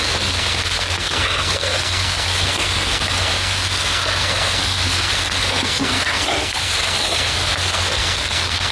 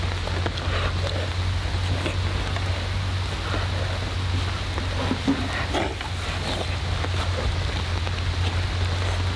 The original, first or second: second